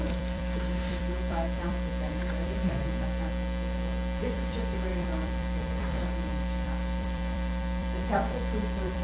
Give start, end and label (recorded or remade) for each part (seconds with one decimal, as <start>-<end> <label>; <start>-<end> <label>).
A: 0.0-3.3 remade; 3.3-4.2 recorded; 4.2-9.0 remade